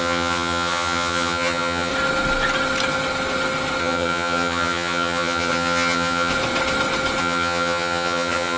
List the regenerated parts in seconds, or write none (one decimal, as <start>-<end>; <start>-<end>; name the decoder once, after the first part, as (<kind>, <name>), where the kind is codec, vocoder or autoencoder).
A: 0.0-1.9 (vocoder, HiFi-GAN); 3.8-6.3; 7.2-8.6